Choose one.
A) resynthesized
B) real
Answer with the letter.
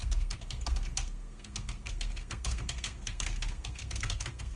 A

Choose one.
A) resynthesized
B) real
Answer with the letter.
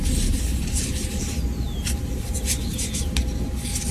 B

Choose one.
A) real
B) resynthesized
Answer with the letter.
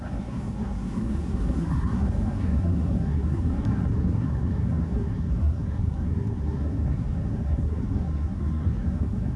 B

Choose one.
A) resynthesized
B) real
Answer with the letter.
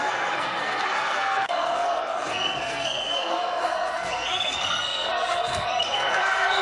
A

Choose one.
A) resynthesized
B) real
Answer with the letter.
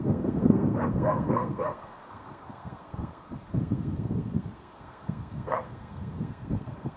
A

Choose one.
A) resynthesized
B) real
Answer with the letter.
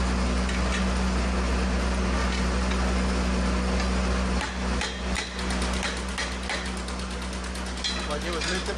B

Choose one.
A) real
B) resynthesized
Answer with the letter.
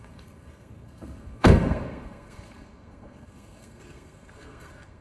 B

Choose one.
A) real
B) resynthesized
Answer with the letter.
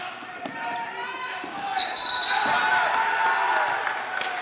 A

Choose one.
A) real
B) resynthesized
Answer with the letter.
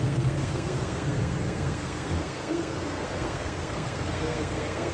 B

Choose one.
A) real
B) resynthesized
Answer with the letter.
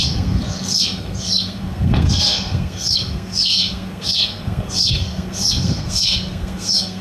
B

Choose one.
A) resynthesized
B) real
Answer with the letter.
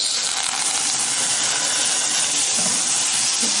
B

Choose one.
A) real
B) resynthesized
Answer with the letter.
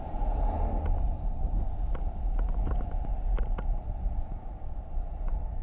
A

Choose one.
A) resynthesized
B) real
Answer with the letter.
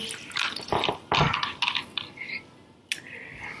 B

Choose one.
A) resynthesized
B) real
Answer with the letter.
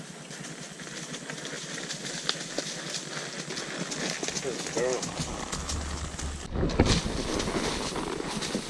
B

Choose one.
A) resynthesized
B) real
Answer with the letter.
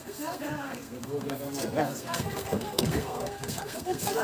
A